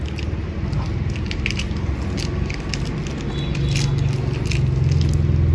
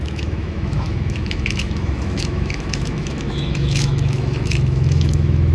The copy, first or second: second